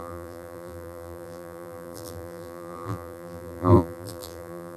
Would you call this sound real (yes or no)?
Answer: no